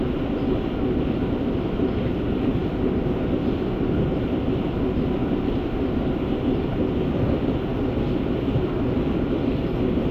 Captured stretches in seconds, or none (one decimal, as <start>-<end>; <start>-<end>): 0.0-10.1